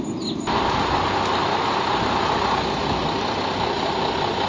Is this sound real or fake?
real